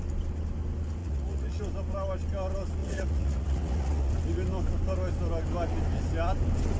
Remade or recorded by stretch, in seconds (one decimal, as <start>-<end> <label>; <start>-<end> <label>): 0.0-1.0 recorded; 1.0-1.6 remade; 1.6-2.8 recorded; 2.8-4.1 remade; 4.1-6.8 recorded